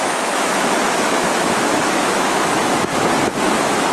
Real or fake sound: fake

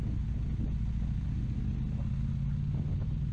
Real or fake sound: real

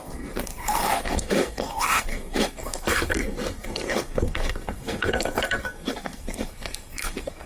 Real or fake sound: fake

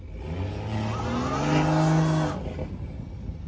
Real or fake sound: real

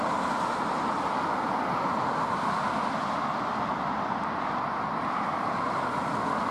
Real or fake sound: real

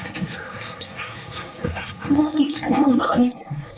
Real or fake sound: fake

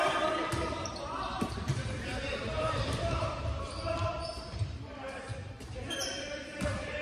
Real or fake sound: fake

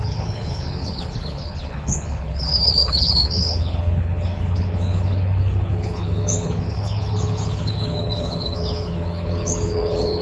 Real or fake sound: fake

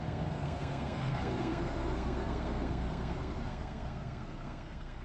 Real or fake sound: fake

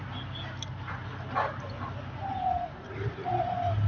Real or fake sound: real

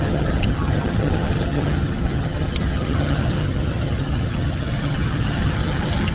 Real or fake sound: fake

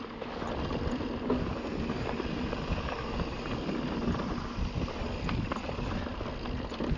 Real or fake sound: real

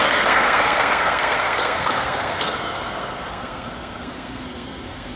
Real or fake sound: fake